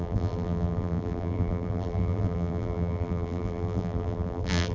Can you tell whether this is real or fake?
fake